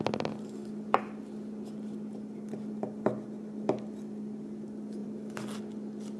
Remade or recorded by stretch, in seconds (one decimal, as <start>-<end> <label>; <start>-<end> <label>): 0.0-6.2 recorded